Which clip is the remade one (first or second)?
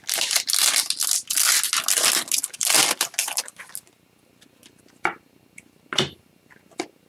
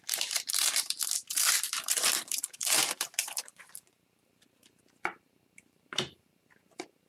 second